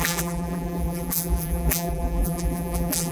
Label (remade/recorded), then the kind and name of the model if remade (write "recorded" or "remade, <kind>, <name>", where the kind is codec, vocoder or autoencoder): remade, vocoder, BigVGAN v2